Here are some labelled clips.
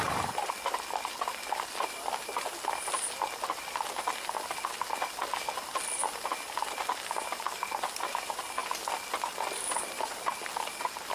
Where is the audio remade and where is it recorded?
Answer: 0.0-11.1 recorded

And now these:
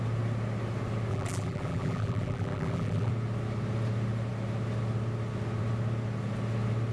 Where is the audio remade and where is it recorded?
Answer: 0.0-1.1 recorded; 1.1-3.1 remade; 3.1-6.9 recorded

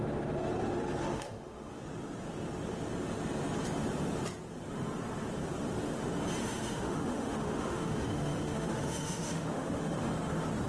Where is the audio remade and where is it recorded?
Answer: 0.0-1.0 recorded; 1.0-1.8 remade; 1.8-6.4 recorded; 6.4-10.1 remade; 10.1-10.7 recorded

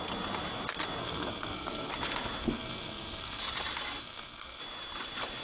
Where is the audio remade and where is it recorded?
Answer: 0.0-1.0 recorded; 1.0-1.9 remade; 1.9-2.4 recorded; 2.4-3.4 remade; 3.4-4.0 recorded; 4.0-4.6 remade; 4.6-5.4 recorded

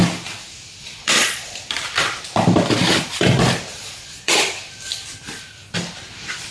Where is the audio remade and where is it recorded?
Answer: 0.0-0.8 recorded; 0.8-1.6 remade; 1.6-3.7 recorded; 3.7-4.3 remade; 4.3-6.5 recorded